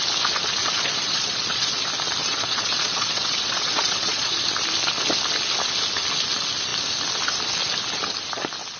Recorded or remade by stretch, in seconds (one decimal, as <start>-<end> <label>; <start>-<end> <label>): 0.0-0.6 recorded; 0.6-1.8 remade; 1.8-2.2 recorded; 2.2-4.4 remade; 4.4-8.8 recorded